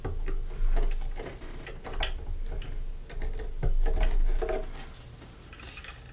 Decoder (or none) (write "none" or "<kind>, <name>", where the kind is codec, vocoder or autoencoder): none